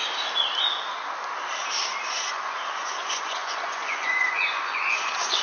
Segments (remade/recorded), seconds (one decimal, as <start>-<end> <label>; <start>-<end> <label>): 0.0-2.1 recorded; 2.1-5.4 remade